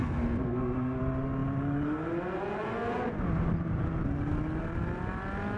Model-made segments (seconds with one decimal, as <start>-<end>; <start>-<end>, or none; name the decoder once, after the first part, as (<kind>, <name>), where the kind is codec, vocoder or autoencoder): 0.0-1.0 (codec, SNAC)